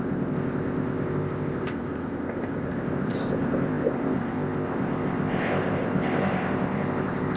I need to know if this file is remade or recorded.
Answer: remade